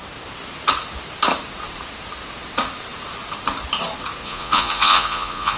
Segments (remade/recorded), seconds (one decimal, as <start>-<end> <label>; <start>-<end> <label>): 0.0-4.2 recorded; 4.2-5.6 remade